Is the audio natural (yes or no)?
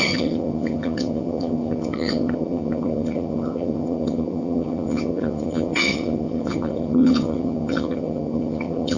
no